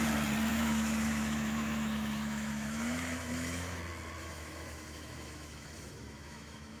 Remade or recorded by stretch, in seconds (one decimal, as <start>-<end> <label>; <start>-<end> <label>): 0.0-0.5 recorded; 0.5-3.8 remade; 3.8-4.2 recorded; 4.2-6.8 remade